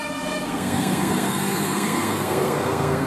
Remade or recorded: remade